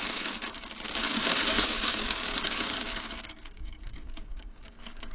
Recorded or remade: remade